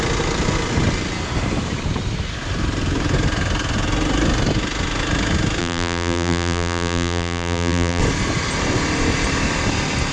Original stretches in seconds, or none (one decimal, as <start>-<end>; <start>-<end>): 0.0-5.6; 8.0-10.1